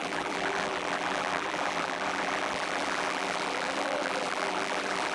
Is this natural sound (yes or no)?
no